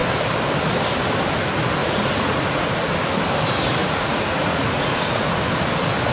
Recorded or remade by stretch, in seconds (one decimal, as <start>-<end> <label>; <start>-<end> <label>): 0.0-1.8 recorded; 1.8-2.7 remade; 2.7-3.8 recorded; 3.8-5.4 remade; 5.4-6.1 recorded